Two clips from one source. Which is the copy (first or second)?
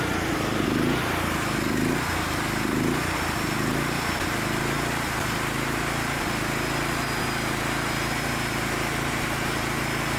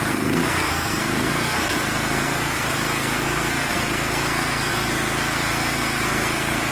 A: second